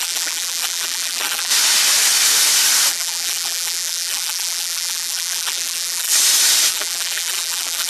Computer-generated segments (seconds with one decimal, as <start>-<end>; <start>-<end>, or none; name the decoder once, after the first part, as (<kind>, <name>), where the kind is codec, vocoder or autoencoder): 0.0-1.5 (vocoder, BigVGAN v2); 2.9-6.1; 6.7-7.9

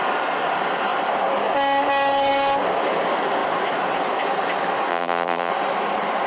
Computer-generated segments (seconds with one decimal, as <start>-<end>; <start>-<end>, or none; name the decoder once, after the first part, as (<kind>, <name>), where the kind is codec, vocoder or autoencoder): 4.9-5.5 (vocoder, BigVGAN v2)

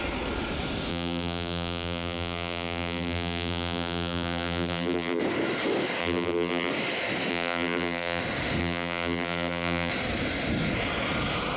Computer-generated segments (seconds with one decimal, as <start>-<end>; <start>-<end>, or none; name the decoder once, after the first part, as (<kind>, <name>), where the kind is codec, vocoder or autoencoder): 0.9-5.2 (vocoder, BigVGAN v2); 6.0-6.7; 7.3-8.2; 8.6-9.9

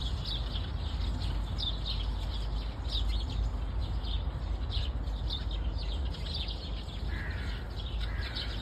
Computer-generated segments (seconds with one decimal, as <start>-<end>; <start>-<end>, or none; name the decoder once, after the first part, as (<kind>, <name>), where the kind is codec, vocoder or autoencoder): none

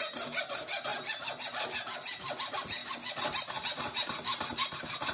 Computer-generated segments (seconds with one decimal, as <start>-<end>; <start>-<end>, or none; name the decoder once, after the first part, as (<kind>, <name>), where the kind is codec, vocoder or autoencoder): 0.9-1.4 (vocoder, BigVGAN v2)

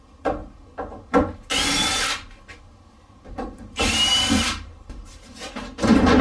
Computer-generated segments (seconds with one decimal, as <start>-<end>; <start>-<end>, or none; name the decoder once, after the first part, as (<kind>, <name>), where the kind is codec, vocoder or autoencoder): 0.0-0.4 (vocoder, BigVGAN v2); 3.5-6.2